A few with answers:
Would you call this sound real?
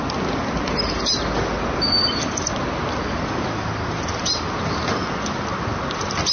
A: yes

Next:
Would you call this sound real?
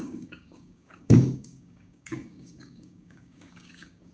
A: no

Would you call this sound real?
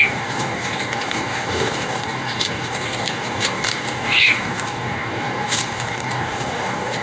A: no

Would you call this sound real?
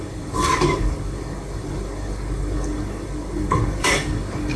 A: no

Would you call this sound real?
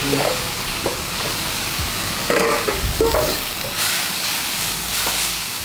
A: no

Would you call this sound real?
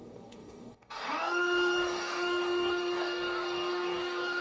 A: no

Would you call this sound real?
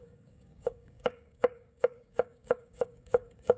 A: no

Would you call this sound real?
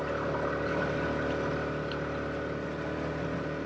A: yes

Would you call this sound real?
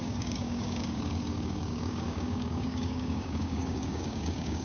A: no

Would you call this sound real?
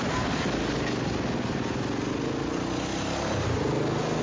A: yes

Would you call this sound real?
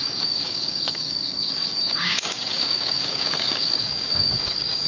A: no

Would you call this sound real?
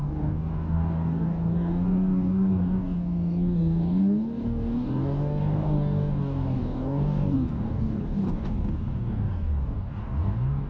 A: no